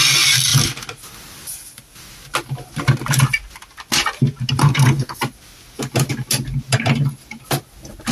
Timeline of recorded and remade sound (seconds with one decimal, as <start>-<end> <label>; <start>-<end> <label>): 0.0-4.6 recorded; 4.6-5.2 remade; 5.2-8.1 recorded